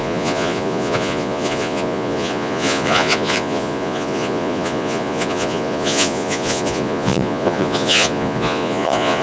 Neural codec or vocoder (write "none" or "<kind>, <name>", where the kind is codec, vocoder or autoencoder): vocoder, Vocos